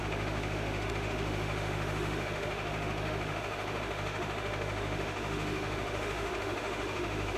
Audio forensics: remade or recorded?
remade